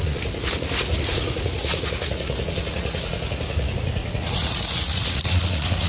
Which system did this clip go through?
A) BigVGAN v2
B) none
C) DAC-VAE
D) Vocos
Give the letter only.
D